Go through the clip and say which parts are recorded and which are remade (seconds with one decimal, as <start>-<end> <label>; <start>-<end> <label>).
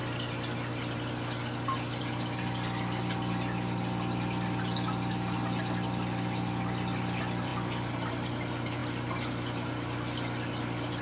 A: 0.0-11.0 recorded